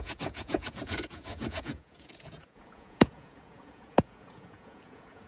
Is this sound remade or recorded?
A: remade